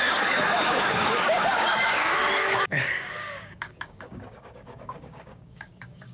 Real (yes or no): no